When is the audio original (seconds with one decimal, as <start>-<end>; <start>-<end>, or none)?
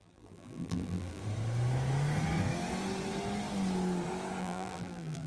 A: 1.2-4.4